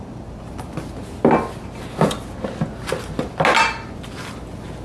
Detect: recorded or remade recorded